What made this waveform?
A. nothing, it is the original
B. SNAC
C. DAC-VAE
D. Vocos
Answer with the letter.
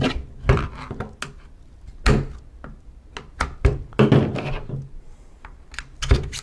A